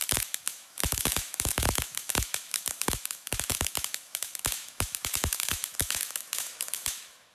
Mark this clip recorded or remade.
remade